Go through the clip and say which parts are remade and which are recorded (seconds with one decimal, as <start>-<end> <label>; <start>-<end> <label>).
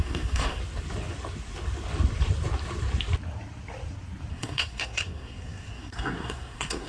0.0-0.6 remade; 0.6-4.3 recorded; 4.3-6.9 remade